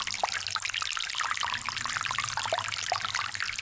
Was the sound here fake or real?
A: real